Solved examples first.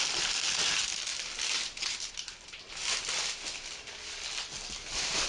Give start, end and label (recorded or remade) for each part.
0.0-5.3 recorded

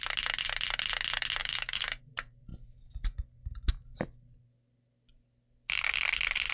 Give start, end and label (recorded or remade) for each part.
0.0-1.4 recorded; 1.4-2.0 remade; 2.0-6.5 recorded

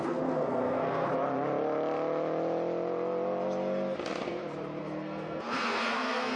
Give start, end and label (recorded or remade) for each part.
0.0-1.1 remade; 1.1-4.8 recorded; 4.8-6.4 remade

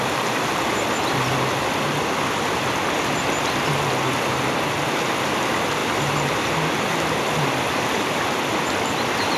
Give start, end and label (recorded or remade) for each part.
0.0-9.4 recorded